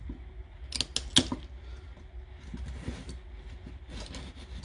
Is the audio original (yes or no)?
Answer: yes